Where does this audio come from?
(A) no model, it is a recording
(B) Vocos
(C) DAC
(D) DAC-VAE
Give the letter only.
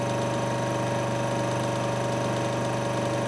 A